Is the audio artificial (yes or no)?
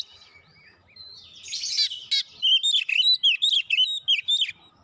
no